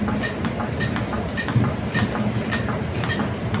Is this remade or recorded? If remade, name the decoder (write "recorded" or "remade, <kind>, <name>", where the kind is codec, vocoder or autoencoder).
recorded